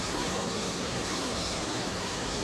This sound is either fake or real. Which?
fake